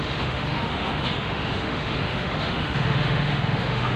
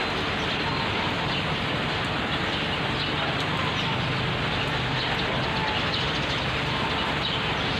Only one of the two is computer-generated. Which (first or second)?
first